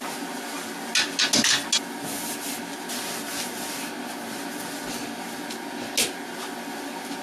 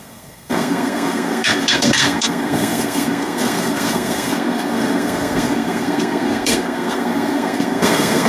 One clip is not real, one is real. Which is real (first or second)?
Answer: first